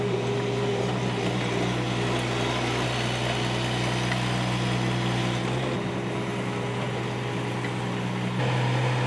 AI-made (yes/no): no